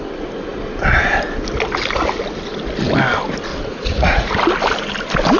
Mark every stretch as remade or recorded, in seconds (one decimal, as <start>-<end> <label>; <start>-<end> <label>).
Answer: 0.0-3.5 recorded; 3.5-4.3 remade; 4.3-5.4 recorded